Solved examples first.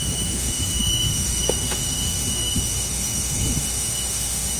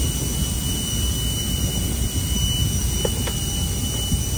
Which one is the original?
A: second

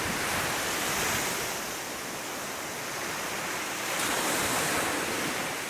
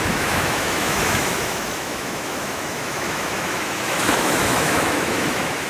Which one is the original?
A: first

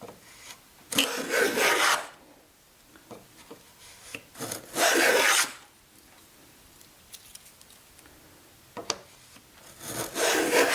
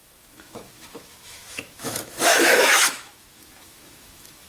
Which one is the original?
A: first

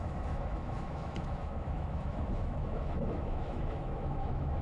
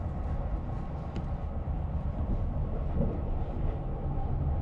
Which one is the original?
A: second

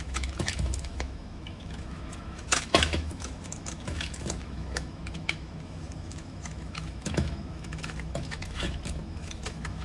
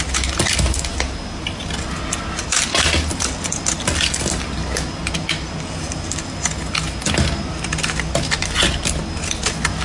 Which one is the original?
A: second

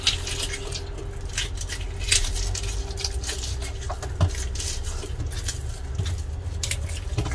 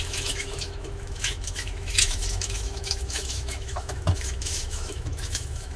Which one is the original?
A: first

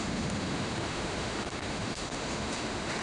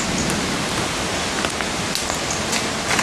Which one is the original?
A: second